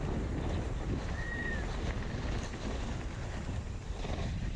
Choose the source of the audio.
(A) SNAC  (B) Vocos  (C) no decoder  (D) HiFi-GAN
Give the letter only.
C